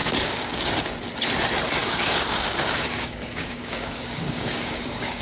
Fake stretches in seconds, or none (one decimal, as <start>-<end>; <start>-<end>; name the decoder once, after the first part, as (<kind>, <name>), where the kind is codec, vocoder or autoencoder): 0.0-0.7 (codec, DAC); 1.8-5.2